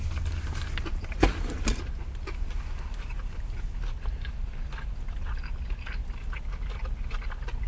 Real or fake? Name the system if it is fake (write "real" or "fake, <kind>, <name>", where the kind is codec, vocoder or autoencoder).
real